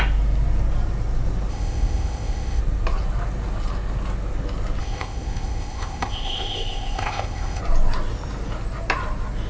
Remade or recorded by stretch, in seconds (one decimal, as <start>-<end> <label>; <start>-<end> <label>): 0.0-1.5 recorded; 1.5-2.6 remade; 2.6-4.8 recorded; 4.8-7.6 remade; 7.6-9.5 recorded